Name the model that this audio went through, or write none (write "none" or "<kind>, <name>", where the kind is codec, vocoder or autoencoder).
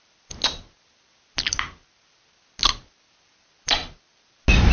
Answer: none